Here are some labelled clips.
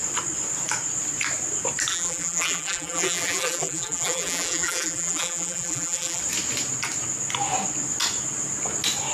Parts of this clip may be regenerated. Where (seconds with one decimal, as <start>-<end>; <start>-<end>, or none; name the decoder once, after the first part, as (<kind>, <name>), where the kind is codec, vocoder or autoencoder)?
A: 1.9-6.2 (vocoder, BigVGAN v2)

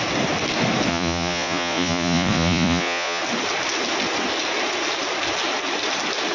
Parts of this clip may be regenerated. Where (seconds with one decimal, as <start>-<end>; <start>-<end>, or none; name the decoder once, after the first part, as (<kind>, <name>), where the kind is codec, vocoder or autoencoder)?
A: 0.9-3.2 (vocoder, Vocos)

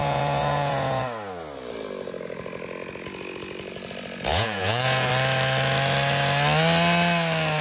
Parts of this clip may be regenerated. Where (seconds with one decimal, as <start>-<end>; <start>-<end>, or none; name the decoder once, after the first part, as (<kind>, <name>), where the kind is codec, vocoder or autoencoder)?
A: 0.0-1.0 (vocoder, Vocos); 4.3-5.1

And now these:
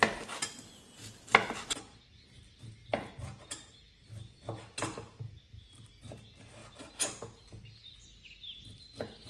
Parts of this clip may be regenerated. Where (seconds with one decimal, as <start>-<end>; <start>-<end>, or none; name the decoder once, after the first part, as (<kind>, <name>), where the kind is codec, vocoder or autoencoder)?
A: none

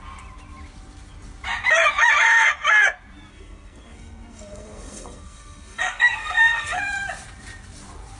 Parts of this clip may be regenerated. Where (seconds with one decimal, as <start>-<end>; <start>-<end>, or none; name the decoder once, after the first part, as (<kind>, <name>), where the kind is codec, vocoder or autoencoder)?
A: 3.3-6.8 (codec, SNAC)

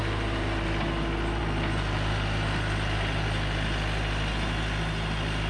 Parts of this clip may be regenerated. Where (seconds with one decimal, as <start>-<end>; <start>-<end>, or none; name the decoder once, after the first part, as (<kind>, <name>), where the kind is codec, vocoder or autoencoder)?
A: none